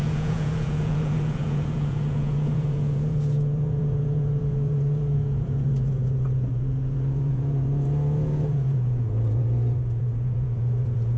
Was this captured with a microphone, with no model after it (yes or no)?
no